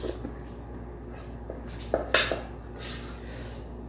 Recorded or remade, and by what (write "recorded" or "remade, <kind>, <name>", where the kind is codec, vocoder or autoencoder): recorded